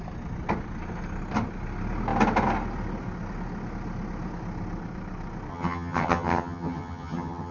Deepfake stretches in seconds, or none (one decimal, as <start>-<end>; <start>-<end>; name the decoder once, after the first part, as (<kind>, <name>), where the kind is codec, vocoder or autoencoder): 5.5-7.5 (vocoder, HiFi-GAN)